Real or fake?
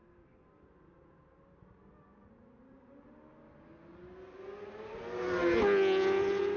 real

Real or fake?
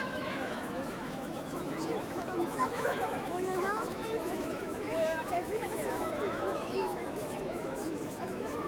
fake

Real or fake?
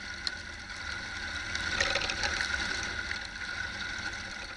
real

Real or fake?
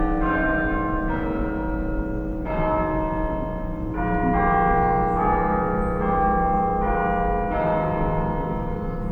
real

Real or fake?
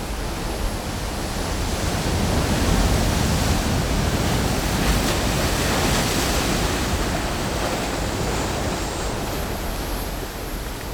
real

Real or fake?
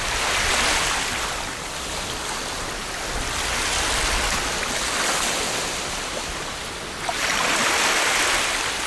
real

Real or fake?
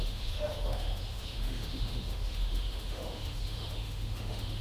fake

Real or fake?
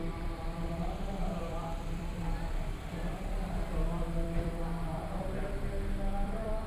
fake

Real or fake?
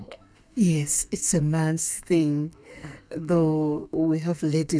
fake